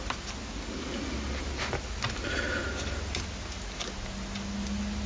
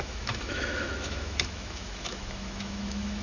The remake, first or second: second